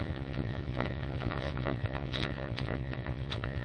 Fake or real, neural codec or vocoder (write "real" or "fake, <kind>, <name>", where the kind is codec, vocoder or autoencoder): fake, vocoder, WaveNeXt